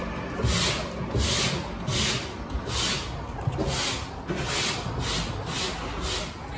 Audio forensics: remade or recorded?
recorded